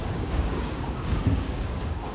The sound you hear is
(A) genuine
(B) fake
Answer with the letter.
B